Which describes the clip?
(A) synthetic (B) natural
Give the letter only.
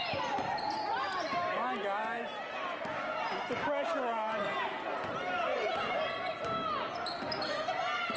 B